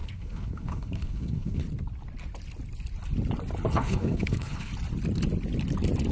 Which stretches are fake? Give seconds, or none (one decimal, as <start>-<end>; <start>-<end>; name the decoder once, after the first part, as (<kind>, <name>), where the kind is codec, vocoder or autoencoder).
0.0-1.6 (codec, HILCodec); 3.7-4.7